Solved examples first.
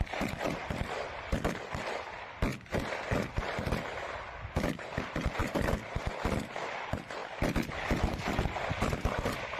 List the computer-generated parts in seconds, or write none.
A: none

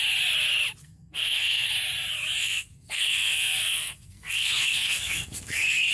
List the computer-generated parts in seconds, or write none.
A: 0.8-1.7; 2.4-5.9

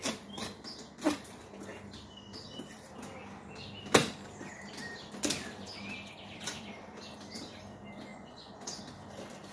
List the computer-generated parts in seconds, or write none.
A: 8.1-8.8

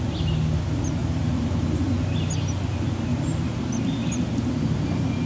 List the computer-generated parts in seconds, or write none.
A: 1.0-1.7; 3.1-3.7

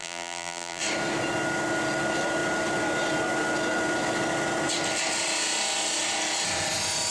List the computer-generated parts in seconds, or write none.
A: 0.0-0.8